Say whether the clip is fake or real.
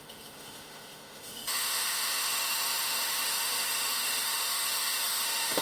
fake